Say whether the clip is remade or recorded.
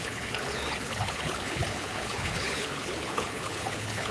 remade